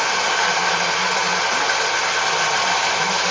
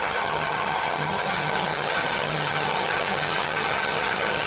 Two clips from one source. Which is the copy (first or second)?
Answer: second